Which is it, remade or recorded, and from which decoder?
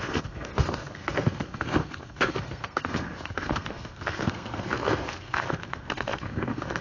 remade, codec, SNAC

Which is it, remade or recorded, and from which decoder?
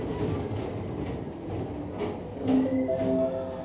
recorded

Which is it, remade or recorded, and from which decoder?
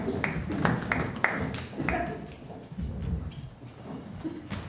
recorded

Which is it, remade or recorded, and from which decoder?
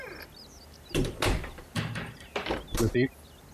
recorded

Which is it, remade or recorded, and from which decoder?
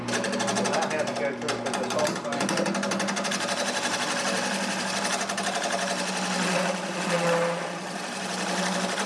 recorded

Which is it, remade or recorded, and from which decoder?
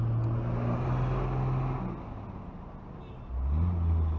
recorded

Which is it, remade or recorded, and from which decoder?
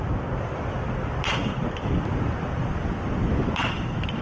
recorded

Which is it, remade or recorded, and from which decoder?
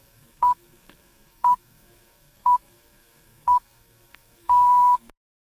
remade, codec, SNAC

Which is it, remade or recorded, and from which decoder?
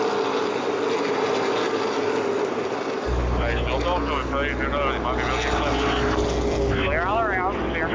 recorded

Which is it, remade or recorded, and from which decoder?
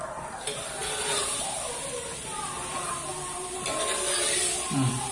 recorded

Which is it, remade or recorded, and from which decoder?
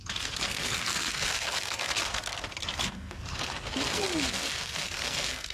remade, codec, SNAC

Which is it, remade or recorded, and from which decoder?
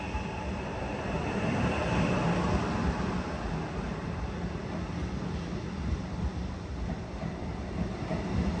recorded